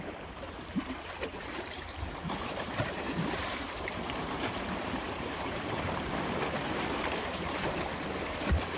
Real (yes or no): no